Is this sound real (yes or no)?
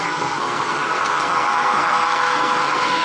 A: no